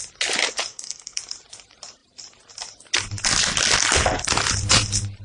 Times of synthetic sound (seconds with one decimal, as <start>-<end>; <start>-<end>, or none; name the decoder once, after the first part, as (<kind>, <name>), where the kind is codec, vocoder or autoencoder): 0.7-1.2 (codec, SNAC)